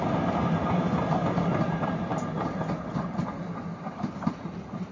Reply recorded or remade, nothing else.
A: recorded